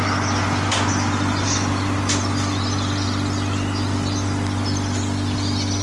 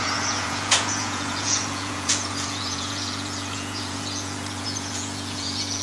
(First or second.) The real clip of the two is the first